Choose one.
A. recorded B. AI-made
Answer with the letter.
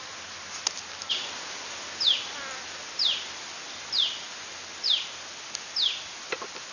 A